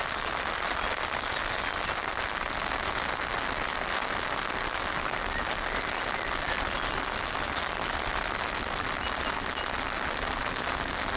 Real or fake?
real